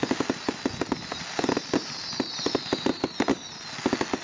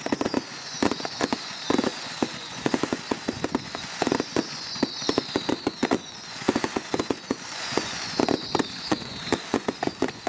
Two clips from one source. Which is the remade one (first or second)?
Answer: second